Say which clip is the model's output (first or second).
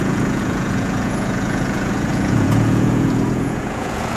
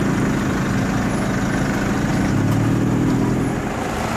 first